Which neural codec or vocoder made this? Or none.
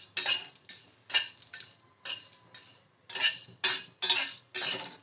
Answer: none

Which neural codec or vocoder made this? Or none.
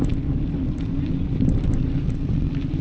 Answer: none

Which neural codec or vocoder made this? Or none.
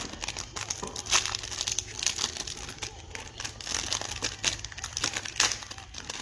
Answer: none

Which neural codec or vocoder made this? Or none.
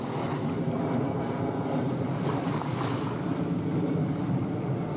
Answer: none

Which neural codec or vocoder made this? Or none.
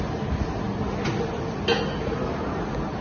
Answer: none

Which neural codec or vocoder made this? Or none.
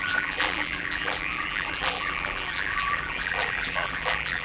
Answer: vocoder, BigVGAN v2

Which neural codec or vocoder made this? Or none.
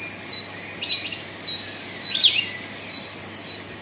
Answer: none